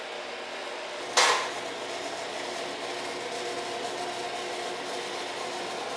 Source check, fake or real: real